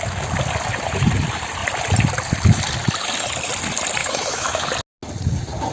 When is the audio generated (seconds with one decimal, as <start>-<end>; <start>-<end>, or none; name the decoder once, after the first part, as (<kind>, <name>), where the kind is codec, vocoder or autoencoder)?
4.0-4.7 (autoencoder, DAC-VAE)